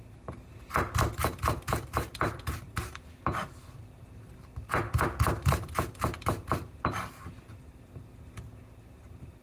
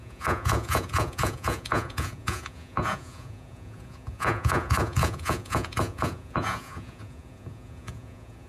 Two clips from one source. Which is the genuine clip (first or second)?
first